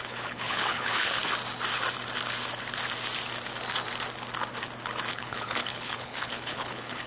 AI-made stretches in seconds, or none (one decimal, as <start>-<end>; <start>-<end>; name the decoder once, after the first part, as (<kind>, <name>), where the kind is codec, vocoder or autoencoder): 0.0-1.2 (codec, HILCodec); 5.1-7.1